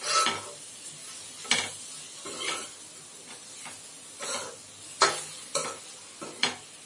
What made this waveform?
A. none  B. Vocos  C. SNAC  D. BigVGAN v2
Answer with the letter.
A